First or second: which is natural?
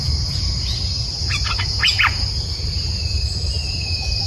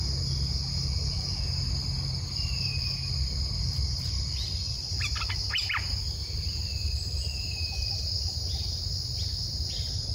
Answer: second